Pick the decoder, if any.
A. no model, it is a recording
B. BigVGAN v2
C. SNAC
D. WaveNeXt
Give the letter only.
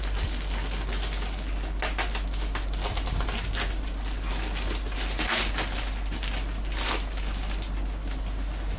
A